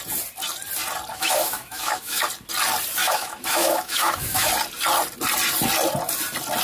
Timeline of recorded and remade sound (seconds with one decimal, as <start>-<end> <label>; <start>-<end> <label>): 0.0-1.1 recorded; 1.1-2.2 remade; 2.2-3.0 recorded; 3.0-4.5 remade; 4.5-6.6 recorded